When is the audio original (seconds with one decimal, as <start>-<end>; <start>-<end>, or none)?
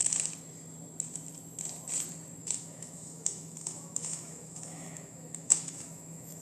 0.0-2.4